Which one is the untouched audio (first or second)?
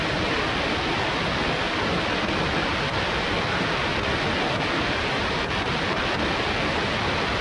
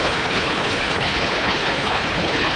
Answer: first